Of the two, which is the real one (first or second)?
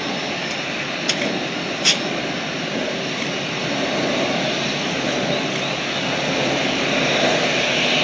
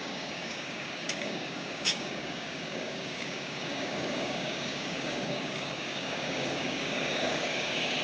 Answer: first